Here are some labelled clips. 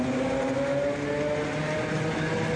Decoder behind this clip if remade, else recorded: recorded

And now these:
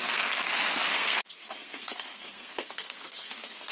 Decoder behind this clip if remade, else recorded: remade, codec, SNAC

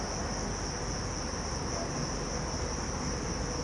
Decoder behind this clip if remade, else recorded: recorded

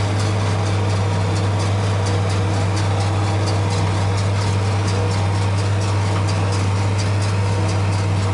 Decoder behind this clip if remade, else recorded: recorded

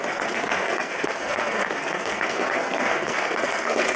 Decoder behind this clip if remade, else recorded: remade, codec, SNAC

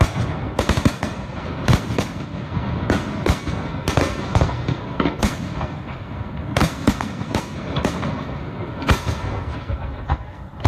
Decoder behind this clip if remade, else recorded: remade, codec, SNAC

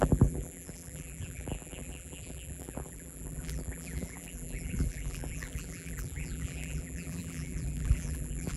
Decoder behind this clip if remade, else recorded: remade, vocoder, BigVGAN v2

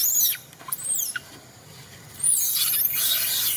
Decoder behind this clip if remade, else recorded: remade, vocoder, BigVGAN v2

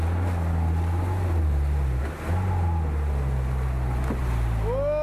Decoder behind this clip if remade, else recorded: recorded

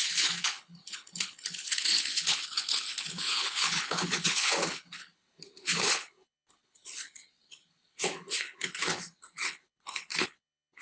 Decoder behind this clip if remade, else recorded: remade, codec, HILCodec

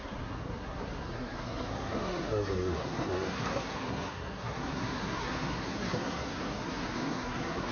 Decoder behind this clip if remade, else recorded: remade, codec, SNAC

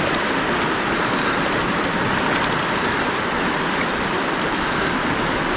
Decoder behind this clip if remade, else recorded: recorded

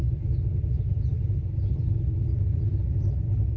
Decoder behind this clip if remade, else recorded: remade, vocoder, BigVGAN v2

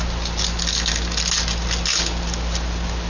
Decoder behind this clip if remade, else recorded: recorded